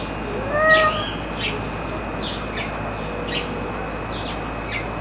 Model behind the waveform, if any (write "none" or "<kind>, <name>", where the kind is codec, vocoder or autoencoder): none